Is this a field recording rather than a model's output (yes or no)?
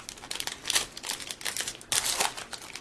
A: yes